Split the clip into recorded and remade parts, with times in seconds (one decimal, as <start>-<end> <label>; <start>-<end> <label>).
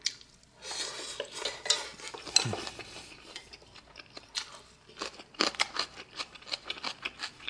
0.0-1.9 remade; 1.9-2.8 recorded; 2.8-7.5 remade